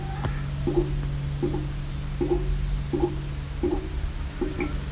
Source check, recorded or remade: recorded